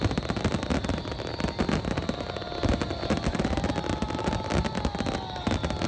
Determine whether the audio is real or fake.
real